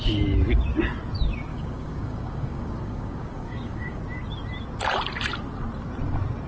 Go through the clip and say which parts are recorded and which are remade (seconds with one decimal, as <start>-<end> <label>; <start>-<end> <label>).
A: 0.0-1.5 recorded; 1.5-4.0 remade; 4.0-6.5 recorded